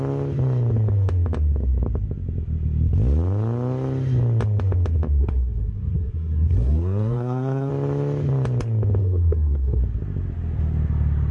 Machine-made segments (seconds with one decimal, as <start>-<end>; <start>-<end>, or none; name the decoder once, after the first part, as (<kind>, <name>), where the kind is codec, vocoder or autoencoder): 5.2-7.7 (codec, SNAC); 9.0-9.8